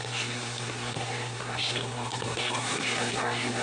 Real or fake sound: fake